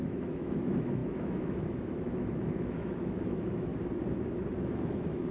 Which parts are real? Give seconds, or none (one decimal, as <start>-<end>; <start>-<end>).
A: 3.7-4.5